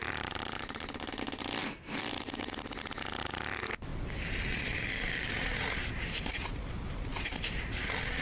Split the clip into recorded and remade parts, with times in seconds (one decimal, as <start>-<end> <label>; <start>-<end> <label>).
0.0-1.1 remade; 1.1-1.6 recorded; 1.6-3.9 remade; 3.9-4.9 recorded; 4.9-7.1 remade; 7.1-8.2 recorded

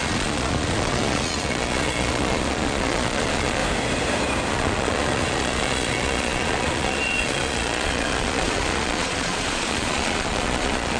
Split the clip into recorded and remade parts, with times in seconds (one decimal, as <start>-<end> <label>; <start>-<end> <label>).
0.0-3.6 remade; 3.6-4.5 recorded; 4.5-11.0 remade